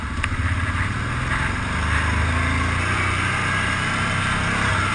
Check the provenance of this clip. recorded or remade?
recorded